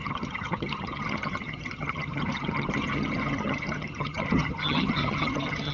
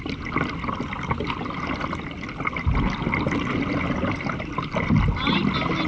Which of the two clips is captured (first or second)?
second